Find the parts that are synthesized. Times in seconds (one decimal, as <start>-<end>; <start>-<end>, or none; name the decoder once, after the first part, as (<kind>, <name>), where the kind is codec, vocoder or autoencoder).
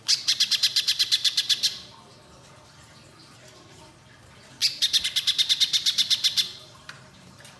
0.0-7.6 (vocoder, BigVGAN v2)